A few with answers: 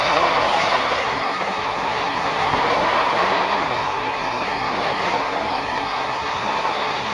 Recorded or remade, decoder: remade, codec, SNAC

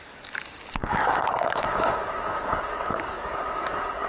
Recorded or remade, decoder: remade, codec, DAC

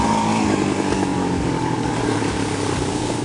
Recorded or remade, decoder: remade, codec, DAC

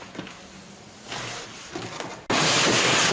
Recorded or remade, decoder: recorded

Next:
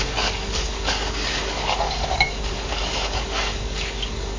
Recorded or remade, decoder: remade, codec, DAC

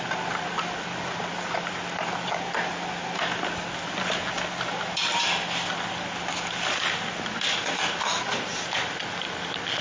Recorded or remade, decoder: recorded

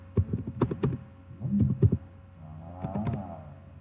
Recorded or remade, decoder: recorded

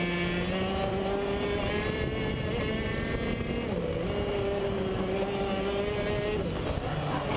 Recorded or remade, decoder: recorded